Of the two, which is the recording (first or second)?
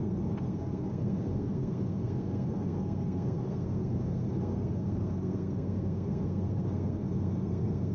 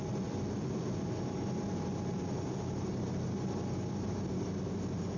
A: second